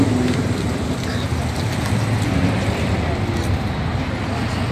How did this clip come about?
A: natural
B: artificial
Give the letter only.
A